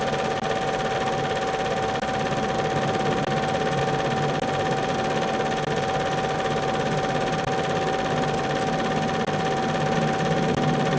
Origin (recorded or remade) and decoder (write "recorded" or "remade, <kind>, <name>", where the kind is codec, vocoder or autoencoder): recorded